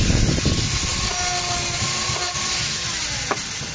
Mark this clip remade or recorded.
recorded